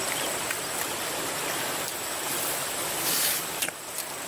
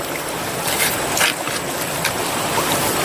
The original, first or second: second